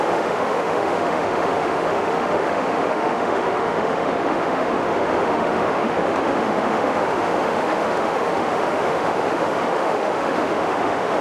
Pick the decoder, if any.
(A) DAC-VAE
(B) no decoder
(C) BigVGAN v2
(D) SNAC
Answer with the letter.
A